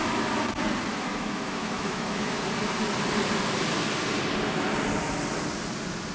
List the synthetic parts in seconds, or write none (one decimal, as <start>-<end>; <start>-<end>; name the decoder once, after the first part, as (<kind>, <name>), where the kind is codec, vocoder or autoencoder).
0.9-2.4 (autoencoder, DAC-VAE)